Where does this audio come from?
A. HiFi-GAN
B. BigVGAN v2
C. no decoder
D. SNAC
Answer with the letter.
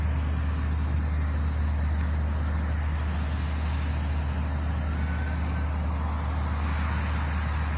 C